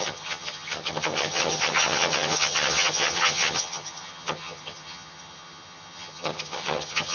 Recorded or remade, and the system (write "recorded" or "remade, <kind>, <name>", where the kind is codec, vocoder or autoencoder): remade, vocoder, HiFi-GAN